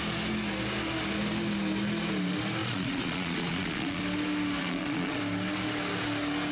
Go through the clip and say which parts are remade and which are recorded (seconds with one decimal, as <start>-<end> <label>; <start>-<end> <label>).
0.0-2.6 recorded; 2.6-4.0 remade; 4.0-4.6 recorded; 4.6-5.2 remade; 5.2-6.5 recorded